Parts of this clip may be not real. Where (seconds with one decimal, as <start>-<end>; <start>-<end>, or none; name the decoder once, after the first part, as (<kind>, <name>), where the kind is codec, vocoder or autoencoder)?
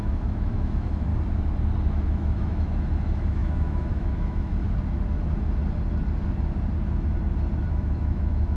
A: 0.0-1.1 (autoencoder, DAC-VAE); 1.9-4.5; 7.7-8.6